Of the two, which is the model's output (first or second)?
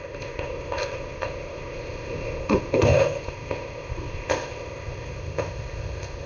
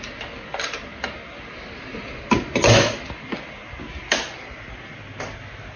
first